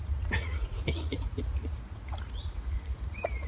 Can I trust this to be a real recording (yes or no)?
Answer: no